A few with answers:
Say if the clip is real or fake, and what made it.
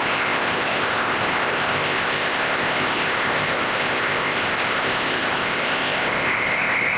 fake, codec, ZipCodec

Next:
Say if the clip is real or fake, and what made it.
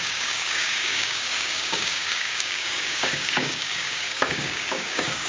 fake, codec, DAC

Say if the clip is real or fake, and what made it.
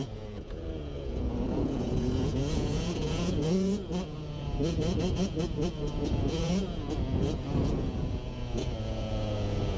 fake, vocoder, Vocos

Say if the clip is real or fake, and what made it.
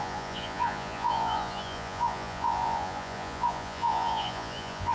fake, vocoder, Vocos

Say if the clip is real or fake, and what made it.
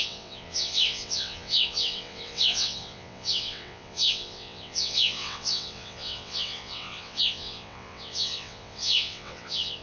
fake, vocoder, WaveNeXt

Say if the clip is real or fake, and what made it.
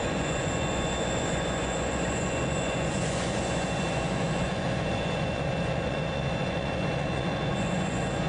fake, vocoder, Vocos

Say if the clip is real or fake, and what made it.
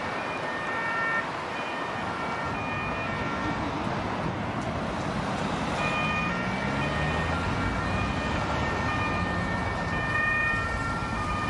real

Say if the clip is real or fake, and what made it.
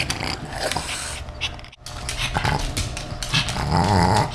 real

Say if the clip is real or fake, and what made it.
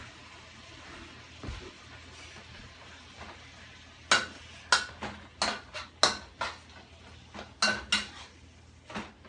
real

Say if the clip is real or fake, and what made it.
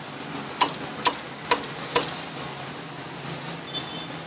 real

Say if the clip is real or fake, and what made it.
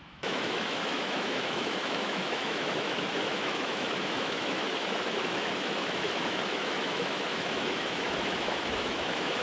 fake, autoencoder, DAC-VAE